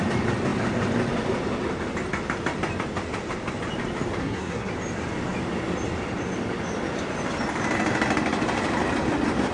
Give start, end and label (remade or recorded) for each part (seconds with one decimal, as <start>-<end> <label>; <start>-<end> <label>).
0.0-4.2 recorded; 4.2-4.7 remade; 4.7-9.5 recorded